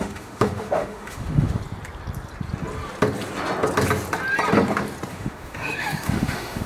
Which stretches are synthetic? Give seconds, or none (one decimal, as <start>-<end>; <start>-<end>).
0.0-1.6; 5.1-6.7